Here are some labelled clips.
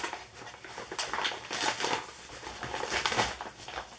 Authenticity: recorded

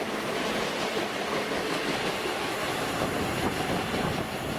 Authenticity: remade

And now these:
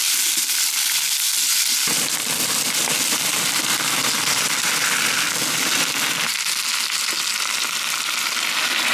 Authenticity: remade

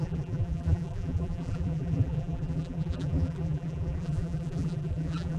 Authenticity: remade